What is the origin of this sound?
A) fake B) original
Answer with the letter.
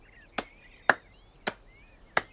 B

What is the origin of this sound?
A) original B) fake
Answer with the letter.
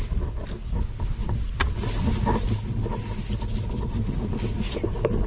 B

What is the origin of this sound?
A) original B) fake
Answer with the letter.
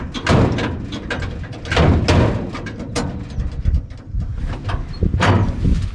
A